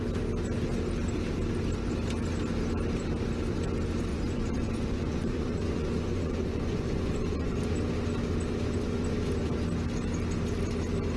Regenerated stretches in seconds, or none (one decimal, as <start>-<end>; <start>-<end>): 4.1-7.6